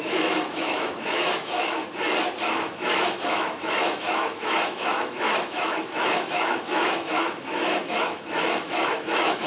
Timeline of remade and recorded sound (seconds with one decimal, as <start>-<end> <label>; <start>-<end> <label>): 0.0-1.8 remade; 1.8-2.4 recorded; 2.4-9.5 remade